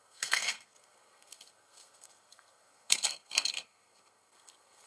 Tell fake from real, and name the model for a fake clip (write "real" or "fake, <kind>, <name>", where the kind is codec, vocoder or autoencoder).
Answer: fake, codec, SNAC